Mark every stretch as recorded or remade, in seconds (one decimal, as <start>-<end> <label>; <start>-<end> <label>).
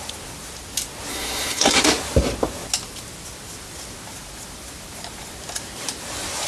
0.0-1.1 recorded; 1.1-1.8 remade; 1.8-6.5 recorded